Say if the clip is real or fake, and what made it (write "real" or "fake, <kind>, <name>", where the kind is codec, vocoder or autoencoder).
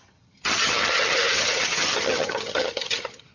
fake, vocoder, HiFi-GAN